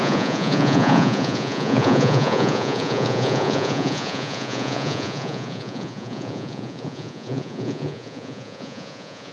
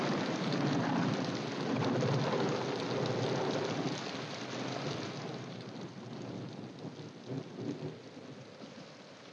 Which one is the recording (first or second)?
second